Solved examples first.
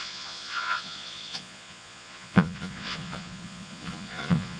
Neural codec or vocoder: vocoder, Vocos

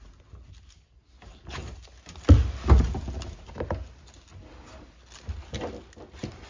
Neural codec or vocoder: none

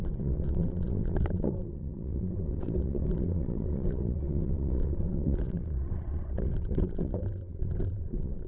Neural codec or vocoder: vocoder, WaveNeXt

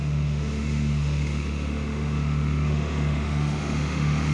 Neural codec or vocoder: autoencoder, DAC-VAE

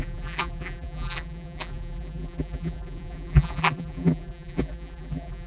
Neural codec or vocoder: vocoder, BigVGAN v2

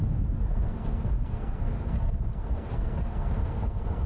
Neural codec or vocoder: codec, SNAC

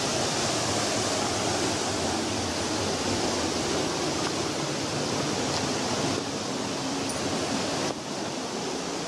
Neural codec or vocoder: none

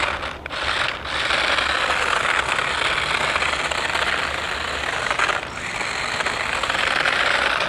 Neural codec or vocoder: none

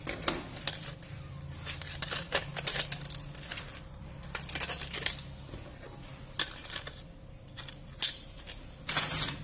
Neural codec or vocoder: none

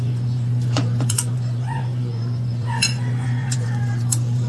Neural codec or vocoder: vocoder, Vocos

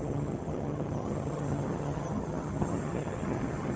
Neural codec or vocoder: vocoder, HiFi-GAN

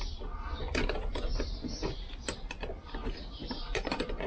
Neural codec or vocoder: none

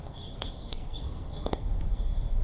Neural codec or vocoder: codec, SNAC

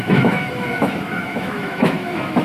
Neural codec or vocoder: autoencoder, DAC-VAE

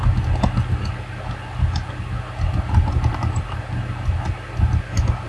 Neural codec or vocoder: none